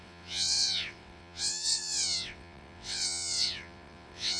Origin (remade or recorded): remade